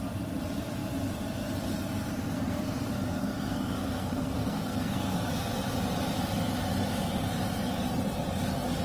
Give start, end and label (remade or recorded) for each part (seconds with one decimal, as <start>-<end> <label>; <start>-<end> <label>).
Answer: 0.0-2.2 recorded; 2.2-5.3 remade; 5.3-8.8 recorded